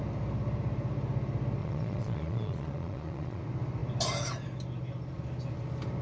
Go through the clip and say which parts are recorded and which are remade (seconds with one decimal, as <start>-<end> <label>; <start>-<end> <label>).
0.0-1.6 recorded; 1.6-3.4 remade; 3.4-6.0 recorded